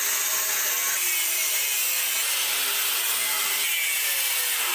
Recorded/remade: recorded